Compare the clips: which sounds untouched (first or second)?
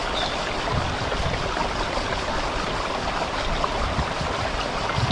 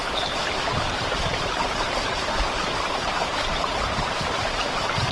first